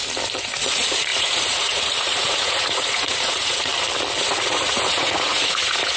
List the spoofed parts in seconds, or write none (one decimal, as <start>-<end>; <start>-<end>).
0.6-3.7; 4.3-6.0